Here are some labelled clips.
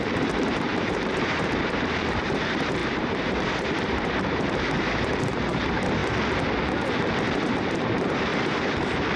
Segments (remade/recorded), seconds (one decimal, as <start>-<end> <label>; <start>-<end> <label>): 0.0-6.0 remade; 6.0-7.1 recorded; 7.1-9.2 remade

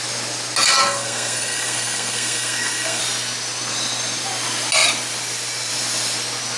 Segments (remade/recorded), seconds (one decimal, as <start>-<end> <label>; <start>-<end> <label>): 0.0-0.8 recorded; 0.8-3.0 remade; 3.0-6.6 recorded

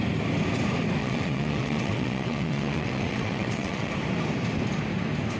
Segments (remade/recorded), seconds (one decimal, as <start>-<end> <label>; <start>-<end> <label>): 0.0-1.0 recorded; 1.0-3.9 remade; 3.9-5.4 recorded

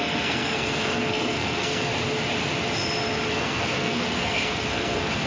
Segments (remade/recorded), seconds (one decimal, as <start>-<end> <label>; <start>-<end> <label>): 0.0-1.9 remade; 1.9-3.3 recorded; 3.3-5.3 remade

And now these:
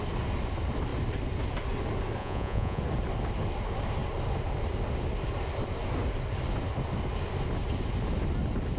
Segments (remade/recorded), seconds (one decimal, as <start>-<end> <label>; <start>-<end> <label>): 0.0-2.2 recorded; 2.2-2.8 remade; 2.8-8.8 recorded

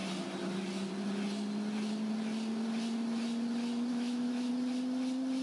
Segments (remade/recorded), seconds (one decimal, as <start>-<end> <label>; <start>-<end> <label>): 0.0-3.9 recorded; 3.9-4.5 remade; 4.5-5.4 recorded

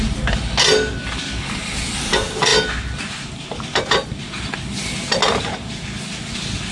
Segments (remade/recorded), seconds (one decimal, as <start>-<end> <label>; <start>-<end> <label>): 0.0-6.7 recorded

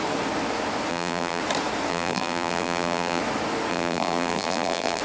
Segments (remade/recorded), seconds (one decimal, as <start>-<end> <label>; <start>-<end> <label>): 0.0-0.9 recorded; 0.9-1.4 remade; 1.4-1.9 recorded; 1.9-3.2 remade; 3.2-3.7 recorded; 3.7-5.0 remade